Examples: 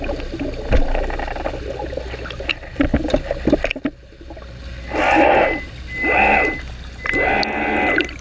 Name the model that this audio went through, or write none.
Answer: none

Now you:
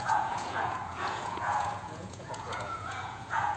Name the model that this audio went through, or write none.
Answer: vocoder, Vocos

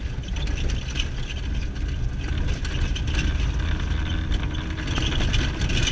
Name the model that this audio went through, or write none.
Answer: none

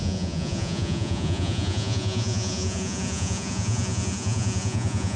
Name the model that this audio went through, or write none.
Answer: vocoder, Vocos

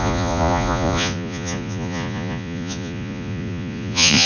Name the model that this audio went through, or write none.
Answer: vocoder, Vocos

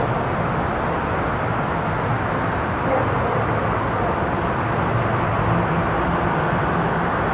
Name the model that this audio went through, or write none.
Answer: none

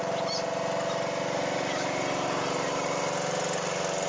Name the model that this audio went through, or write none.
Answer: none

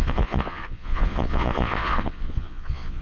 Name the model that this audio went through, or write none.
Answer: vocoder, Vocos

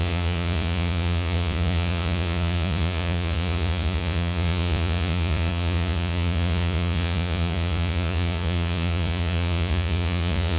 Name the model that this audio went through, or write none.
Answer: vocoder, Vocos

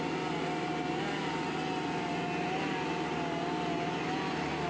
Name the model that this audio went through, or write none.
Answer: none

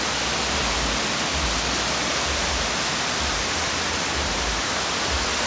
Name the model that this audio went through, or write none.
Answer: none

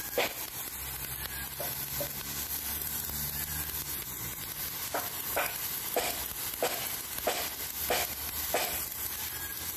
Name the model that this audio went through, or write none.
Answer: none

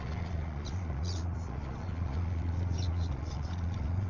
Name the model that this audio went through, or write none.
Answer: vocoder, Vocos